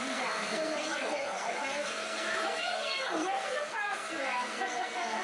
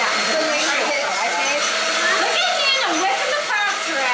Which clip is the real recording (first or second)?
second